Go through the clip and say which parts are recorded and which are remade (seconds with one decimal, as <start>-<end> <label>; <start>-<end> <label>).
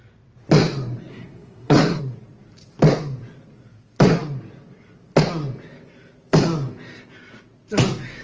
0.0-1.1 recorded; 1.1-2.0 remade; 2.0-8.2 recorded